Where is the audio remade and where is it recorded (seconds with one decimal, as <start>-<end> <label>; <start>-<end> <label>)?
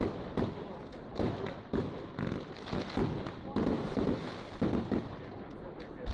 0.0-6.1 recorded